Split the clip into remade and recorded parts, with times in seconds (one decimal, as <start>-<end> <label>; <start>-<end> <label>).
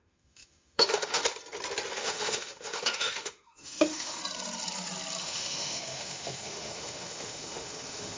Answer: 0.0-1.2 remade; 1.2-1.9 recorded; 1.9-4.2 remade; 4.2-5.2 recorded; 5.2-8.2 remade